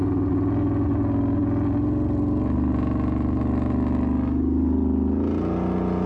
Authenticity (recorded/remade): recorded